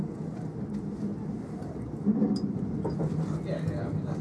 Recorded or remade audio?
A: recorded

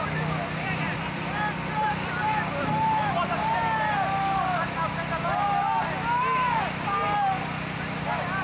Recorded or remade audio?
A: recorded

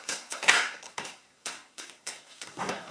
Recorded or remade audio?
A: remade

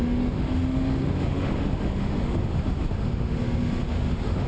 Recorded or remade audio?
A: remade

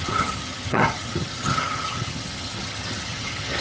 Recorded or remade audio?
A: remade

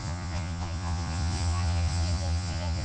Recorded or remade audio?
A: remade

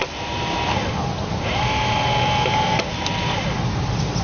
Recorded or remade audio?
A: recorded